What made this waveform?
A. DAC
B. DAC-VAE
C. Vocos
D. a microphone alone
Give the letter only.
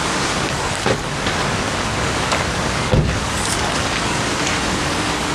A